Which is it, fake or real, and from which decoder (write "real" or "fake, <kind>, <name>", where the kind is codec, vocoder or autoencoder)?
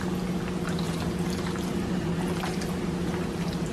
real